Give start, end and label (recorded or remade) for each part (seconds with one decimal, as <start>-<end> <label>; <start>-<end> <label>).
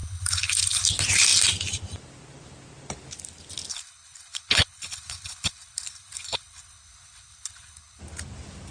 0.0-0.9 remade; 0.9-3.7 recorded; 3.7-8.0 remade; 8.0-8.7 recorded